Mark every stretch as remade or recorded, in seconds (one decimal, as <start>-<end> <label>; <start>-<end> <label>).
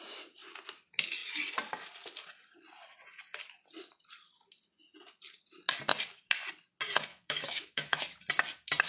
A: 0.0-7.1 recorded; 7.1-8.0 remade; 8.0-8.9 recorded